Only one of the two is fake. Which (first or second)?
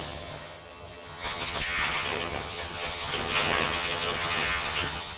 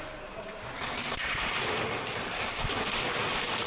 first